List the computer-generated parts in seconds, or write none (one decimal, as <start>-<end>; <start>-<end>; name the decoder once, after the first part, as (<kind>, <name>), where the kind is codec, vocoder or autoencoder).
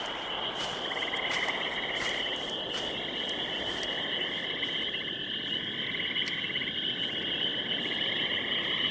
none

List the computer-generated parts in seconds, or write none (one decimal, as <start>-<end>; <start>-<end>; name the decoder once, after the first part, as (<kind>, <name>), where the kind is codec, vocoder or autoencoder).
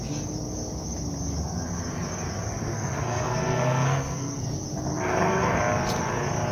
2.5-4.4 (codec, SNAC); 4.9-5.6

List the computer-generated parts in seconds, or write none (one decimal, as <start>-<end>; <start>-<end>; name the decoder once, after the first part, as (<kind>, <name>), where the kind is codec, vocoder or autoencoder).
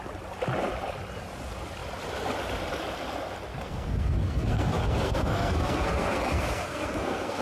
3.5-7.4 (codec, SNAC)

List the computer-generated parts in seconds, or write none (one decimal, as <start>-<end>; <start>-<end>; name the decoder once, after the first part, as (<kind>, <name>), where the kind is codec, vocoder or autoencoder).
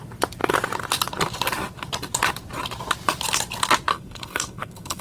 3.9-5.0 (codec, SNAC)